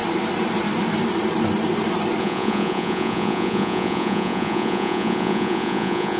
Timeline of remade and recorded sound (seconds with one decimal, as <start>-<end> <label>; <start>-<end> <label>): 0.0-2.2 recorded; 2.2-6.2 remade